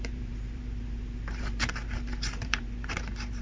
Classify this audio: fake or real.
fake